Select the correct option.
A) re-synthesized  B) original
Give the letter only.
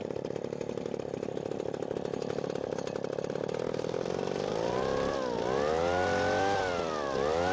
B